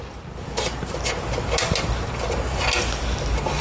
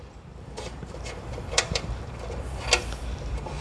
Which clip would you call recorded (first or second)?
first